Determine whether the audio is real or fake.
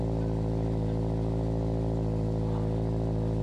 real